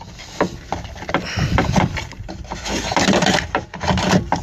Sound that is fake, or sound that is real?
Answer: fake